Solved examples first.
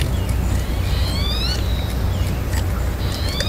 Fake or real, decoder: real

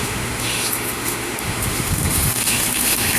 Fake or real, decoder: fake, autoencoder, DAC-VAE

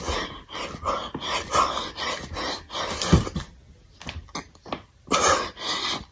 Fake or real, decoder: real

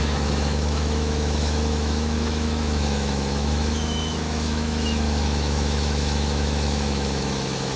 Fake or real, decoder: fake, autoencoder, DAC-VAE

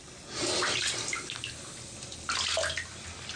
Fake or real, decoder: real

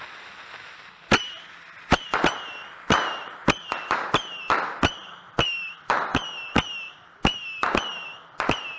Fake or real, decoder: real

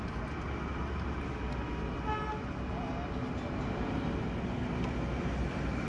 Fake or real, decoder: real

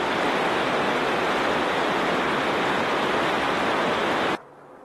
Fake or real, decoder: real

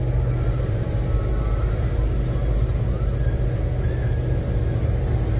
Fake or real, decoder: real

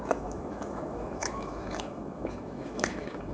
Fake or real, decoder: fake, autoencoder, DAC-VAE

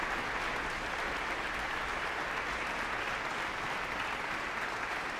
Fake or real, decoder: real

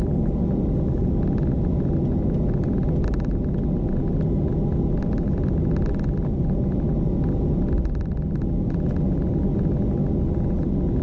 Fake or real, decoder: real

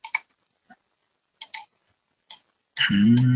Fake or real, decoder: real